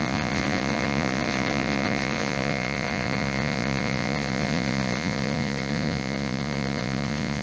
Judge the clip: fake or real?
fake